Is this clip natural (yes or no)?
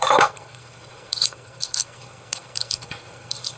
no